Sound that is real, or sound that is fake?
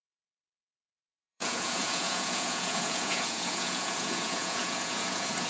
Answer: fake